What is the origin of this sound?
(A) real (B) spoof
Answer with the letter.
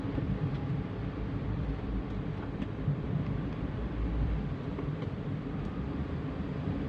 B